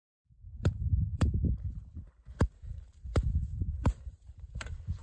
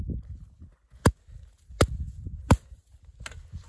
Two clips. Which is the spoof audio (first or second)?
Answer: first